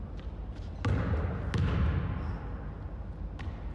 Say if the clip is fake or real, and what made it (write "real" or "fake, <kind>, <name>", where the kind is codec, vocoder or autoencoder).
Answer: real